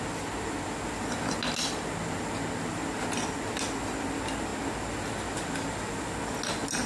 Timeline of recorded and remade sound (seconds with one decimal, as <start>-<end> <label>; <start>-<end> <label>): 0.0-6.9 recorded

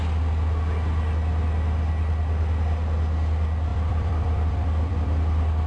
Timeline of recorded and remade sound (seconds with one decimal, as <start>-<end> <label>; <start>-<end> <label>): 0.0-3.7 recorded; 3.7-5.7 remade

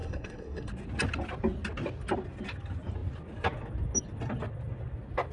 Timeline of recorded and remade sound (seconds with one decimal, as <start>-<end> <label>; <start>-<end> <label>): 0.0-0.7 remade; 0.7-5.3 recorded